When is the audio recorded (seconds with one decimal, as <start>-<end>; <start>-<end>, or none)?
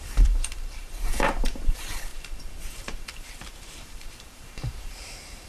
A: none